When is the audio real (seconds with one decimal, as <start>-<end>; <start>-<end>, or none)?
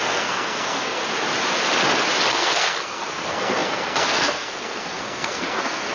1.0-2.3